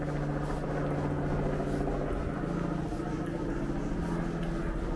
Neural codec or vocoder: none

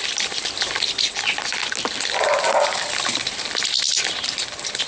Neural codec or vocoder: none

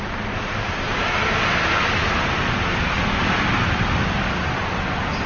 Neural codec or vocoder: none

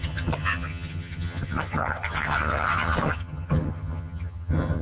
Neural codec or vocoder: vocoder, HiFi-GAN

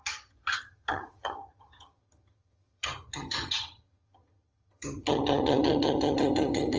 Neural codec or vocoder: vocoder, HiFi-GAN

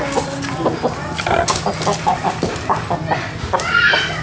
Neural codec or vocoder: none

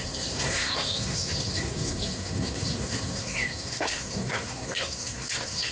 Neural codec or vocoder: codec, SNAC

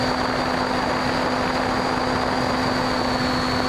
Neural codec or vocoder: none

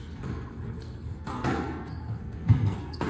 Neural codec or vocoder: codec, SNAC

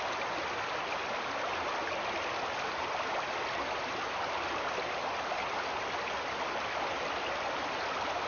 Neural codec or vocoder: none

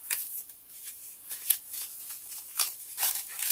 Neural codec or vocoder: autoencoder, DAC-VAE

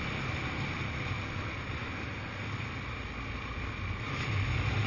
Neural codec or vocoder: none